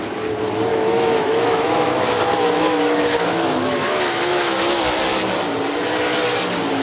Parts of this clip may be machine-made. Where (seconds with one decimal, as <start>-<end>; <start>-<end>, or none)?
0.7-4.8